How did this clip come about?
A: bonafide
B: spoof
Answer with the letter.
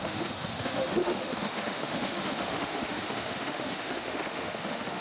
B